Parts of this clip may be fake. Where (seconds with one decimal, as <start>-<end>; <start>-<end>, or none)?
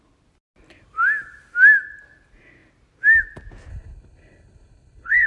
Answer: 3.7-5.3